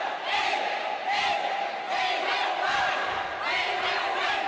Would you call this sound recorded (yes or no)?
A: yes